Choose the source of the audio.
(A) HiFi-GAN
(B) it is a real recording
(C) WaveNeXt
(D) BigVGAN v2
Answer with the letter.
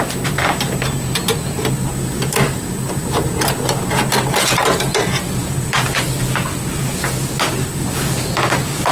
B